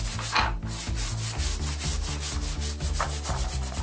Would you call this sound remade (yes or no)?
no